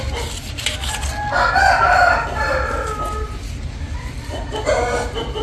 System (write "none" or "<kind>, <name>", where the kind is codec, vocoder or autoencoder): none